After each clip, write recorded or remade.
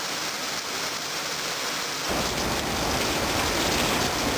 recorded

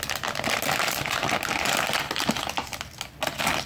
recorded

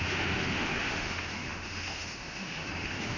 remade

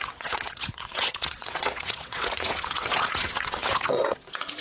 remade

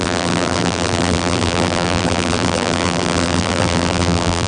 remade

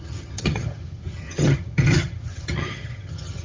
remade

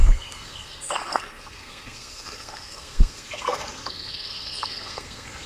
remade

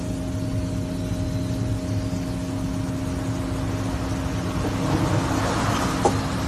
recorded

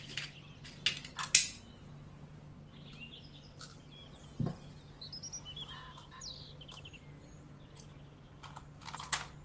recorded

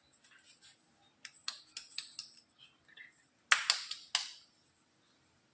recorded